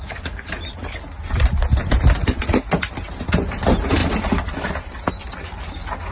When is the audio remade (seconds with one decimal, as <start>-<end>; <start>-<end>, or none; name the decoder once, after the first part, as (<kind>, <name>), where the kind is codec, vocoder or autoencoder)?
1.8-2.4 (vocoder, BigVGAN v2); 4.0-5.1